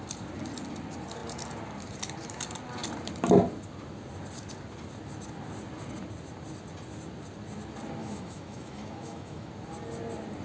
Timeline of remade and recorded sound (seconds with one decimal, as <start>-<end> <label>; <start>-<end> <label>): 0.0-8.0 recorded; 8.0-9.5 remade; 9.5-10.4 recorded